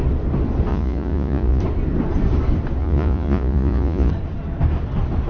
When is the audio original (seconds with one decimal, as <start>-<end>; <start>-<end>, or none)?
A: 0.0-0.7; 1.6-2.8; 4.1-5.3